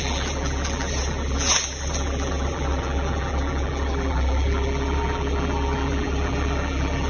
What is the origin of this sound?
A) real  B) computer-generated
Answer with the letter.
B